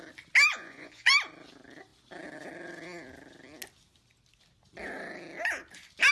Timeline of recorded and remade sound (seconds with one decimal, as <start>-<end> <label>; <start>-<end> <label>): 0.0-0.5 recorded; 0.5-1.1 remade; 1.1-6.1 recorded

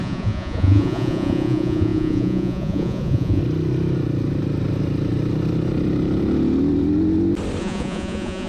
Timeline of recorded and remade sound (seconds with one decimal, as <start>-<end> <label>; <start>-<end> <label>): 0.0-3.4 remade; 3.4-7.6 recorded; 7.6-8.5 remade

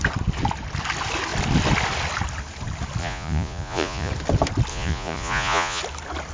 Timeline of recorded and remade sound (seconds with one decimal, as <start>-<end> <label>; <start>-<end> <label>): 0.0-3.0 recorded; 3.0-4.1 remade; 4.1-4.7 recorded; 4.7-5.8 remade; 5.8-6.3 recorded

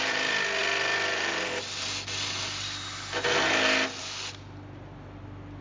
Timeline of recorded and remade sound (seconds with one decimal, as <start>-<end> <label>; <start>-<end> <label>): 0.0-5.6 recorded